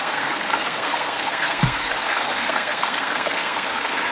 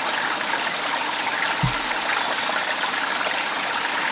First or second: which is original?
second